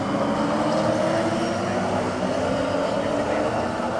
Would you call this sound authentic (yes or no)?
yes